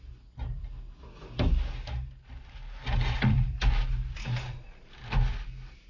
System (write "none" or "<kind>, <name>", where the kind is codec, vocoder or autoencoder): none